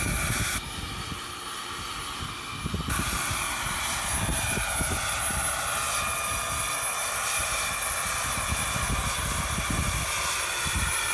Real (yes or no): yes